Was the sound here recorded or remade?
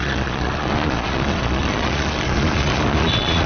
remade